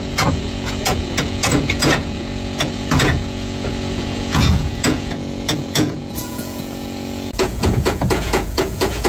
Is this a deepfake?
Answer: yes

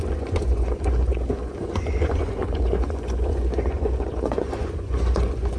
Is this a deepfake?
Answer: yes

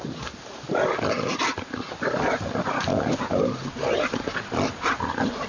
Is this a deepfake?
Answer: no